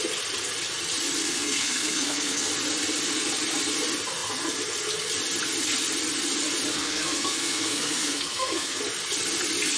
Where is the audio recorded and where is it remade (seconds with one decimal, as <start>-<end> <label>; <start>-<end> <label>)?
0.0-1.2 recorded; 1.2-2.5 remade; 2.5-6.7 recorded; 6.7-8.8 remade; 8.8-9.8 recorded